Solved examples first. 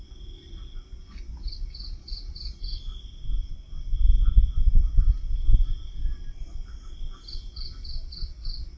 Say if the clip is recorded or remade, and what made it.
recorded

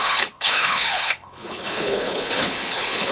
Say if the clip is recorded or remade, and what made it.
remade, codec, HILCodec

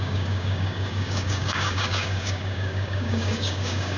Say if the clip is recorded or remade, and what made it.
remade, codec, DAC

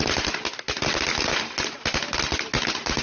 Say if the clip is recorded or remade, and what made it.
recorded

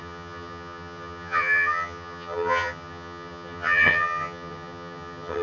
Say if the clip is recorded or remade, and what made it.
remade, vocoder, HiFi-GAN